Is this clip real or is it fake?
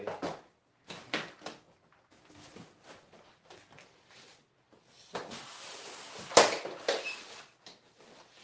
real